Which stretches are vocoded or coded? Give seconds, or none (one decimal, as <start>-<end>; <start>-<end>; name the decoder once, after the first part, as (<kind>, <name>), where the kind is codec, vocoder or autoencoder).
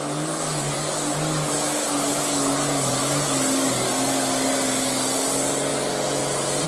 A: none